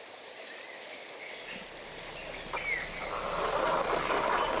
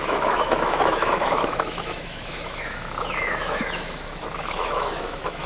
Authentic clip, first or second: first